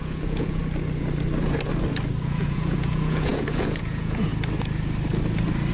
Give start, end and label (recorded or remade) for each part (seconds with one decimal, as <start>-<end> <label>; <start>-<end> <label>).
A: 0.0-0.6 remade; 0.6-2.2 recorded; 2.2-4.3 remade; 4.3-5.7 recorded